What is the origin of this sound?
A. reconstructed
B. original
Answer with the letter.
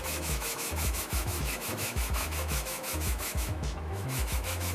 A